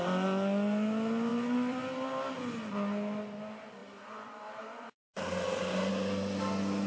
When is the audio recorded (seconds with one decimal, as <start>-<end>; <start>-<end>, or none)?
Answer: 0.0-1.3; 1.8-3.8; 5.9-6.9